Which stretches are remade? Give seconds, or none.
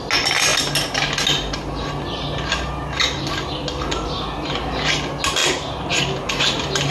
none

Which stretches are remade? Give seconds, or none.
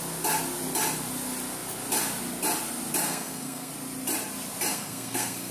3.0-3.7 (codec, SNAC); 4.7-5.5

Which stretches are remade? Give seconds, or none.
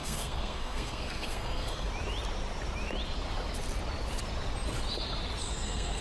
0.0-1.9 (codec, SNAC); 5.4-6.0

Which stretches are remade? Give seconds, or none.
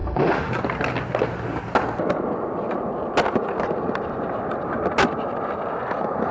0.0-0.5 (autoencoder, DAC-VAE)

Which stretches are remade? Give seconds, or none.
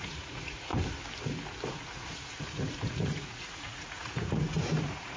0.0-0.7 (vocoder, Vocos); 1.7-5.2